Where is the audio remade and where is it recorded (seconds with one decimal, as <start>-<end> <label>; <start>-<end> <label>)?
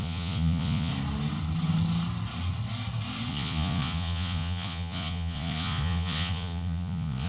0.0-0.9 remade; 0.9-3.3 recorded; 3.3-7.3 remade